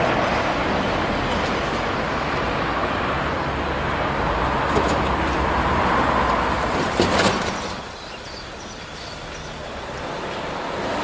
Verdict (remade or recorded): recorded